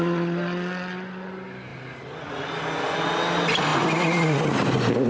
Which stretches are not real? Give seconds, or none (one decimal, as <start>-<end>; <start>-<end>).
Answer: none